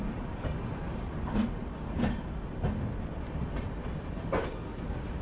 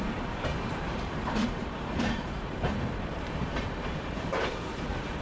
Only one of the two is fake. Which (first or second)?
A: second